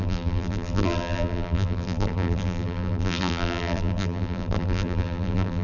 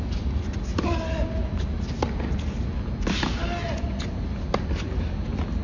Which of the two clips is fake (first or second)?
first